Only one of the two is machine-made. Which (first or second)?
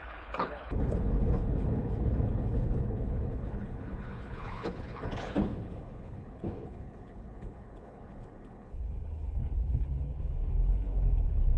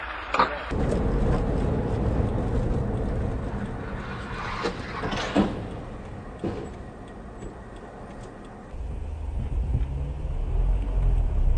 first